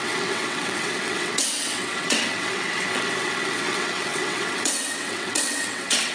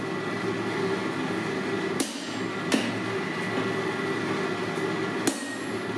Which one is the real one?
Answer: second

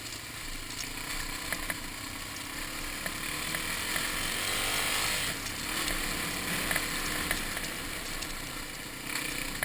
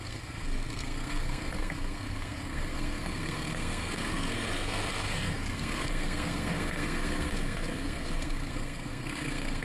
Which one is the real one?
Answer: first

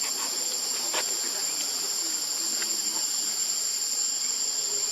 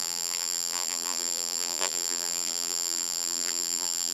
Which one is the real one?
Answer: first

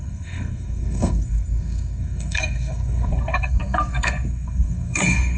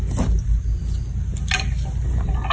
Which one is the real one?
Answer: second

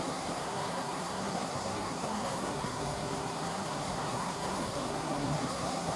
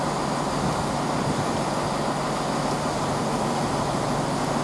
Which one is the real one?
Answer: second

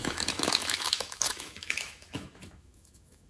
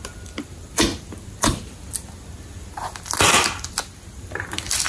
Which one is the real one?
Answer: second